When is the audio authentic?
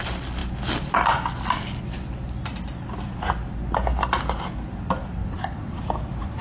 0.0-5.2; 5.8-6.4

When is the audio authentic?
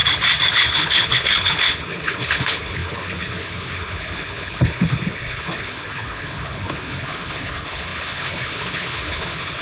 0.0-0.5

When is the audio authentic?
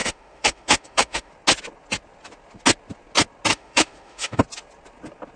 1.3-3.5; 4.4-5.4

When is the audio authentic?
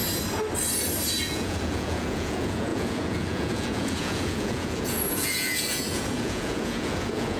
0.0-1.2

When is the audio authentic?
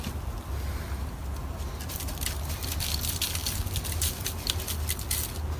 0.0-5.6